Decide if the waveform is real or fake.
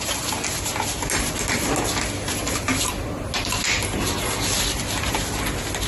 real